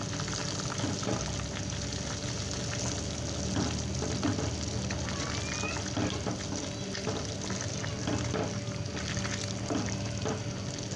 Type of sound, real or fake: real